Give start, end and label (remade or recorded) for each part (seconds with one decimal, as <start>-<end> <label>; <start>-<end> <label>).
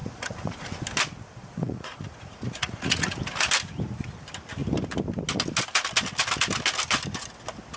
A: 0.0-0.8 remade; 0.8-1.4 recorded; 1.4-3.2 remade; 3.2-7.8 recorded